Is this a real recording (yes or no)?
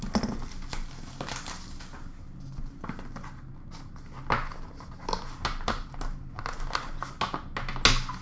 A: yes